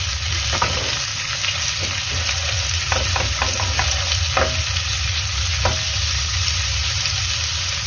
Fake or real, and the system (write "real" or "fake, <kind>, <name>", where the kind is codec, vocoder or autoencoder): real